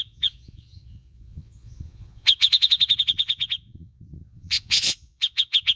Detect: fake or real fake